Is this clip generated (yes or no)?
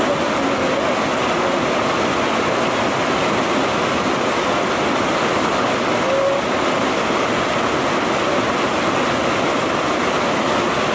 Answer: no